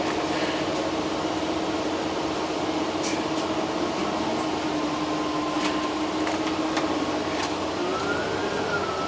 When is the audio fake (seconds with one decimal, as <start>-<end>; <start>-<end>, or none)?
none